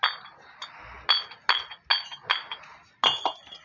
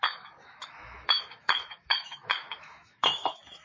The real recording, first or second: first